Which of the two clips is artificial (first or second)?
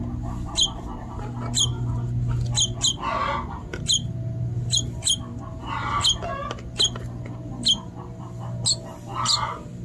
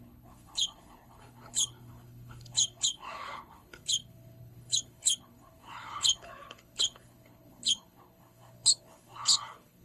second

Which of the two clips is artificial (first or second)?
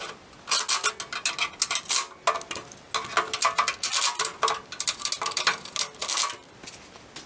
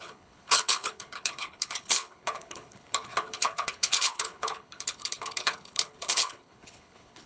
second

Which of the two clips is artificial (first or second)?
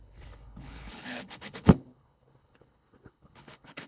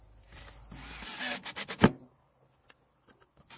first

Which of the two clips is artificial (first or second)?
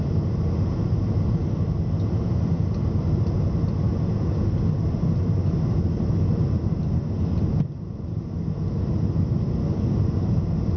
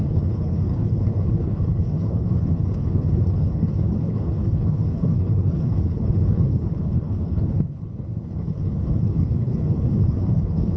second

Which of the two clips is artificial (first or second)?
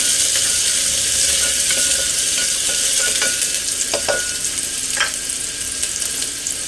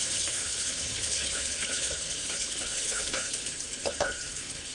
second